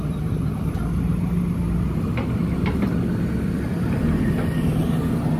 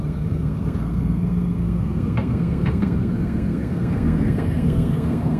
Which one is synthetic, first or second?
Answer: second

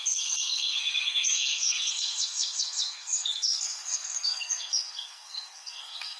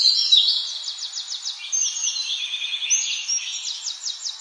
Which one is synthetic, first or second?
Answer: first